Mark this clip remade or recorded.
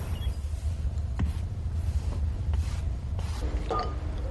remade